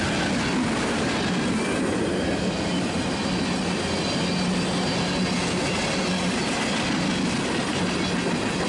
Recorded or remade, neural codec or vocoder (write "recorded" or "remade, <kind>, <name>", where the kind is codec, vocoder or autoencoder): recorded